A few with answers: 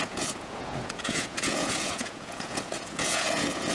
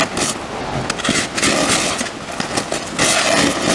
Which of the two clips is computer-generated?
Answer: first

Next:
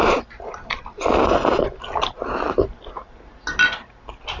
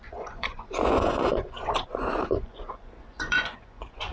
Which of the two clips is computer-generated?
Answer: second